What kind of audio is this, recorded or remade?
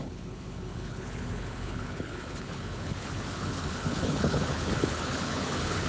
remade